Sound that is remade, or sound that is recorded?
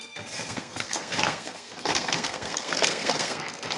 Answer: remade